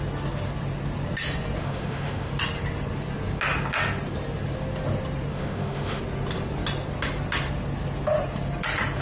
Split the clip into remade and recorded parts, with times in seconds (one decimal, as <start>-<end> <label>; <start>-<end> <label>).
0.0-1.6 recorded; 1.6-2.3 remade; 2.3-5.3 recorded; 5.3-6.0 remade; 6.0-9.0 recorded